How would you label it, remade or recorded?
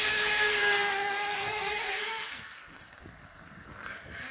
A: remade